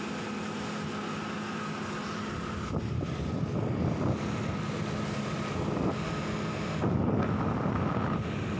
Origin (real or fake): real